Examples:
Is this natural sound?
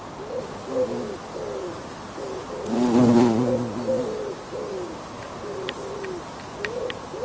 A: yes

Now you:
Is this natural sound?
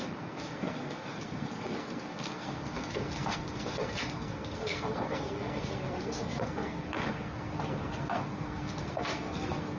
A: no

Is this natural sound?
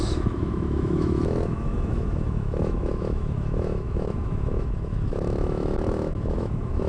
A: no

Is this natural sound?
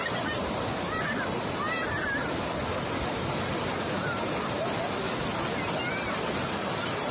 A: yes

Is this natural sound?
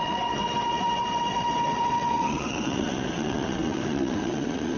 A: no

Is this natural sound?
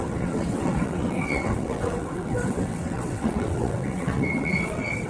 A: no